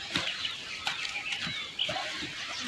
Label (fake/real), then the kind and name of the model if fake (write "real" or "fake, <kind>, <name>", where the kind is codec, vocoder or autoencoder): real